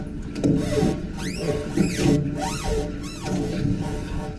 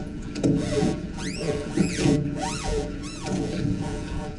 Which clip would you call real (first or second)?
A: first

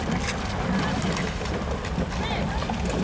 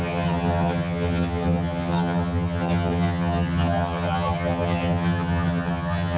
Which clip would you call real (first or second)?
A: first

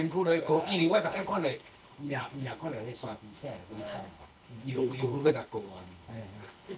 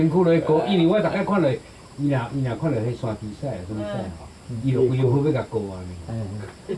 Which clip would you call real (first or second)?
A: second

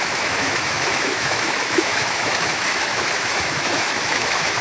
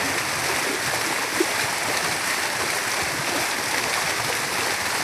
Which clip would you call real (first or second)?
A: second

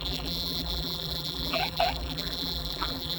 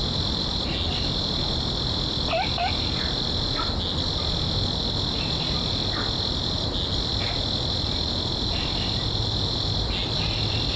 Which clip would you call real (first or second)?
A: second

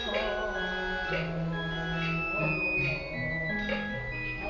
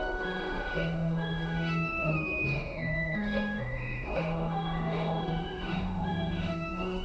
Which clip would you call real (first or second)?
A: first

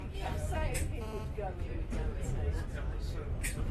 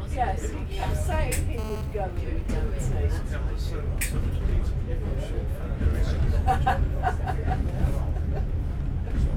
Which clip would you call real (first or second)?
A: second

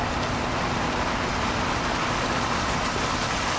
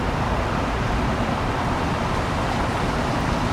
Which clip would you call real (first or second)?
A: first